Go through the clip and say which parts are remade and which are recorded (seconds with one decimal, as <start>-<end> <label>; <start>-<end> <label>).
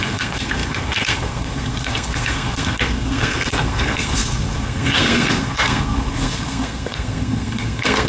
0.0-8.1 remade